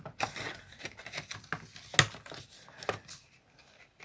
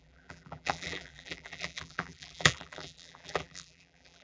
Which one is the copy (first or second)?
second